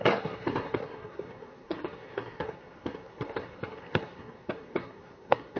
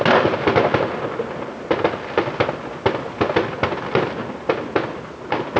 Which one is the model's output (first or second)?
first